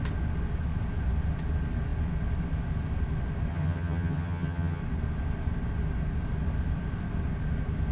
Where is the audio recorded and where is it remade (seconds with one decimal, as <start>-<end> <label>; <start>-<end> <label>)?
0.0-3.5 recorded; 3.5-4.8 remade; 4.8-7.9 recorded